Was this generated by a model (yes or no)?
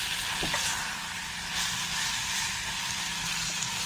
no